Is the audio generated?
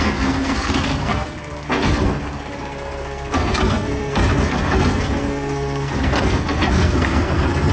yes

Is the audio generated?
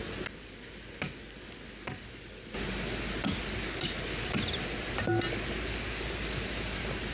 no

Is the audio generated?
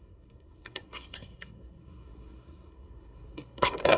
yes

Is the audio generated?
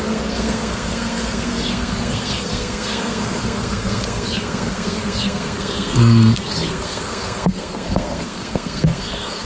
yes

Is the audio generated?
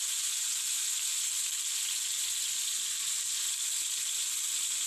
no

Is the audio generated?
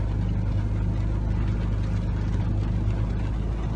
no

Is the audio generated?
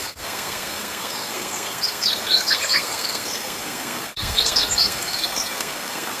yes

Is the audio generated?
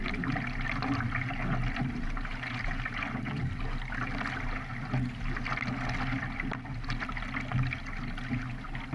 no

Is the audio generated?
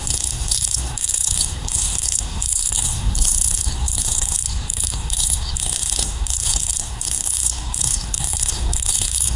yes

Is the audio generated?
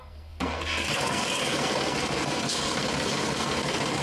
yes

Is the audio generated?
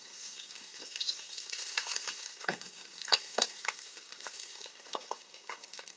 yes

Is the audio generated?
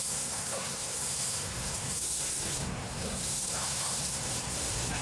yes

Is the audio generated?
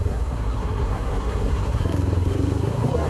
yes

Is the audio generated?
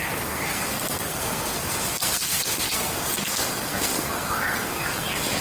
yes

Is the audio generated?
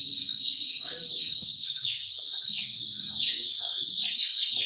yes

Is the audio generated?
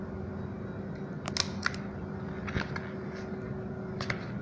no